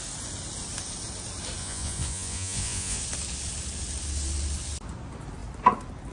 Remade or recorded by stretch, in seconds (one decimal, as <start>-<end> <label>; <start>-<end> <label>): 0.0-1.6 recorded; 1.6-3.0 remade; 3.0-6.1 recorded